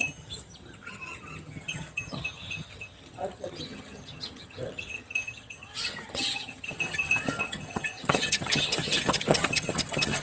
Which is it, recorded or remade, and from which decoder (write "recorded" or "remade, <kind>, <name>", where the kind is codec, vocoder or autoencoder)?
remade, vocoder, HiFi-GAN